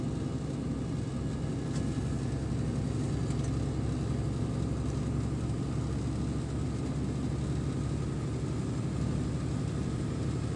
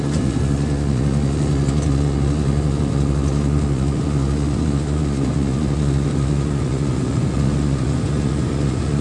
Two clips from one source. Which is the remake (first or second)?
second